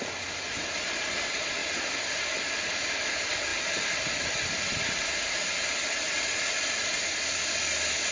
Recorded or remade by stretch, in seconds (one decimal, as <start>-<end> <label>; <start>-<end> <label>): 0.0-8.1 recorded